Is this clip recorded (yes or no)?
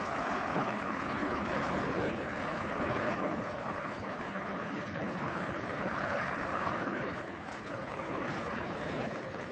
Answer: no